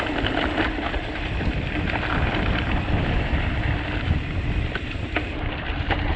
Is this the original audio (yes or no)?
no